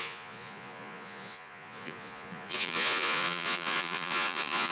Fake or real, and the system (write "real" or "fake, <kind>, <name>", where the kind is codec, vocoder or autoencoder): fake, vocoder, Vocos